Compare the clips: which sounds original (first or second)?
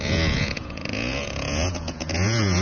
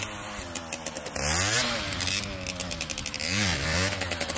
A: second